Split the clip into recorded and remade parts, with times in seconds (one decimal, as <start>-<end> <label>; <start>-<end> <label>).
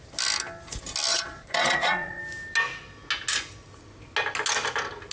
0.0-1.1 recorded; 1.1-2.2 remade; 2.2-5.1 recorded